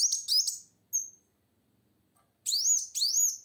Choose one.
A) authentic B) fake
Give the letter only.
A